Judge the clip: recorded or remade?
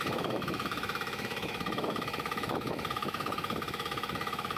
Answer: remade